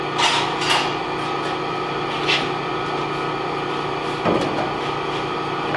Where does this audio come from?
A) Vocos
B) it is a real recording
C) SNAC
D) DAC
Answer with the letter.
B